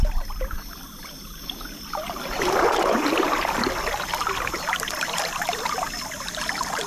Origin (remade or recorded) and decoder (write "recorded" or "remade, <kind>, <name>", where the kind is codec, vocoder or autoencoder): recorded